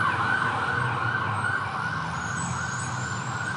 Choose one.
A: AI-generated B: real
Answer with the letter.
B